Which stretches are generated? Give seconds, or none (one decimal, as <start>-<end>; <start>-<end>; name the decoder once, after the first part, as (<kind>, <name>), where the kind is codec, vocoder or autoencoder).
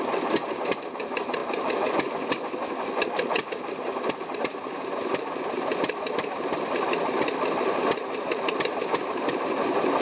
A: none